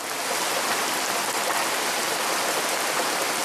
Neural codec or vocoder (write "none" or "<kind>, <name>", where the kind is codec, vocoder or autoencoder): none